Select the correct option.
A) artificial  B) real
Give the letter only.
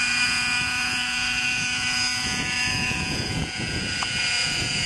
A